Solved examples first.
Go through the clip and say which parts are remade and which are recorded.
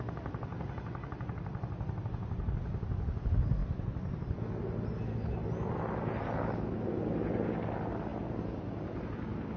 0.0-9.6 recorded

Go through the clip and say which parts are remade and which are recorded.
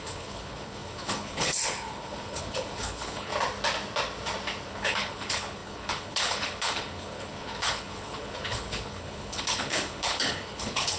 0.0-3.3 remade; 3.3-4.7 recorded; 4.7-11.0 remade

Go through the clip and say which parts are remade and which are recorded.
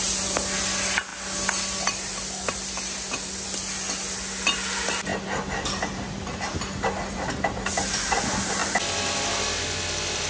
0.0-10.3 recorded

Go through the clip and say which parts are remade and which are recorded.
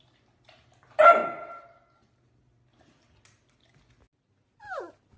0.0-5.2 recorded